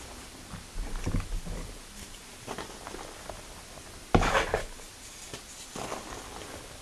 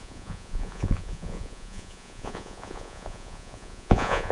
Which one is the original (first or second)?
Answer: first